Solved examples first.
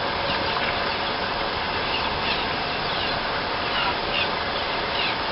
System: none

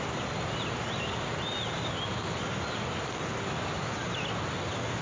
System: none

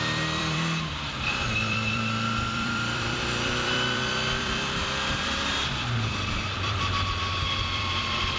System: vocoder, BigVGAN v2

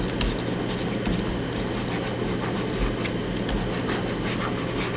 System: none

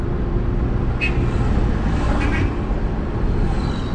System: none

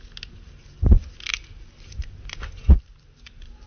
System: none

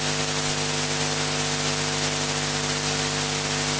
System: none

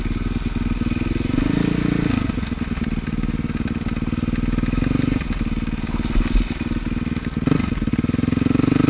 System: none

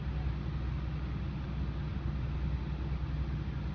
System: none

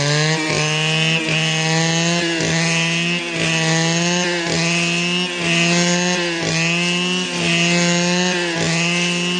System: none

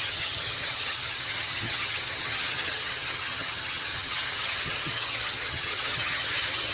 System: vocoder, HiFi-GAN